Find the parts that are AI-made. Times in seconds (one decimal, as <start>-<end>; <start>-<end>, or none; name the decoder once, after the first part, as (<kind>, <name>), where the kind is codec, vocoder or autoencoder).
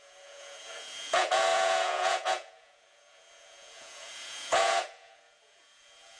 0.0-6.2 (vocoder, Vocos)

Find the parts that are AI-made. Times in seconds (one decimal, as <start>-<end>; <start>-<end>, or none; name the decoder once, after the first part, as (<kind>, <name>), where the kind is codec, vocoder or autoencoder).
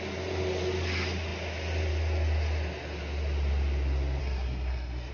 4.2-5.1 (codec, SNAC)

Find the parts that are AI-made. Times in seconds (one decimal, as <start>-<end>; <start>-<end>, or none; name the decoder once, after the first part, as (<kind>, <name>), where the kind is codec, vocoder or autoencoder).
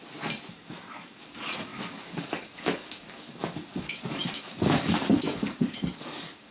0.5-6.5 (codec, DAC)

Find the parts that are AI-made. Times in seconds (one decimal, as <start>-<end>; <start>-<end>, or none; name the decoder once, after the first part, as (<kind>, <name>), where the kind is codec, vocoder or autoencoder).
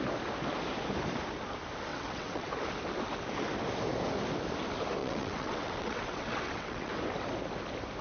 1.9-2.5 (vocoder, WaveNeXt); 5.0-6.9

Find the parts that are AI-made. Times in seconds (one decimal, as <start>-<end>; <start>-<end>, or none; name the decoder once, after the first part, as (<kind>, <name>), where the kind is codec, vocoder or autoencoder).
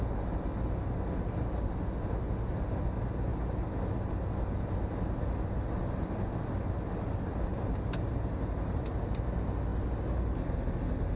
7.5-9.0 (vocoder, BigVGAN v2)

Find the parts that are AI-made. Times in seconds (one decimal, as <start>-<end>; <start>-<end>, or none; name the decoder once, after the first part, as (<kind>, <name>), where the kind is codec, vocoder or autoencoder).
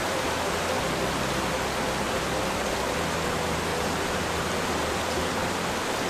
3.7-5.4 (vocoder, BigVGAN v2)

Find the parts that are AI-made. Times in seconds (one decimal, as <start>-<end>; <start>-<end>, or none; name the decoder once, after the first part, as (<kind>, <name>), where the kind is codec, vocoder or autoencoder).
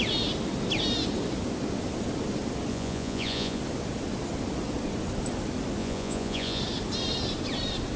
2.7-3.6 (vocoder, Vocos); 5.8-6.6